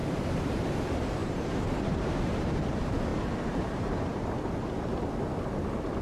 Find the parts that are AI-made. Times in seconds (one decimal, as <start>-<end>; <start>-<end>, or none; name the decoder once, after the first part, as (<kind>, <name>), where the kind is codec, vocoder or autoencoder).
0.0-0.6 (vocoder, BigVGAN v2); 1.2-2.2; 3.1-4.2